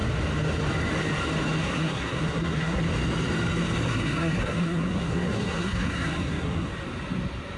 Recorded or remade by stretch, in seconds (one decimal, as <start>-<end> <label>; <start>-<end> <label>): 0.0-1.6 recorded; 1.6-2.8 remade; 2.8-3.9 recorded; 3.9-6.7 remade; 6.7-7.6 recorded